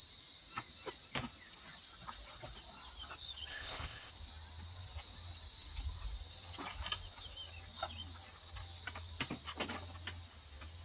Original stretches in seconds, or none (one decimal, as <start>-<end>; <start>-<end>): 0.0-3.5; 4.1-10.8